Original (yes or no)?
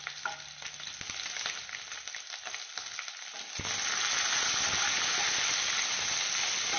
yes